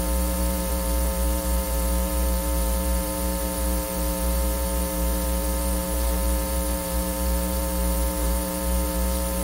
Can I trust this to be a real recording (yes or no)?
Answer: no